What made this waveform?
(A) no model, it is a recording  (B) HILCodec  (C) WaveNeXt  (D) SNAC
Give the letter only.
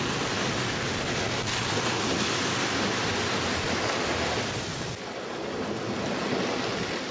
A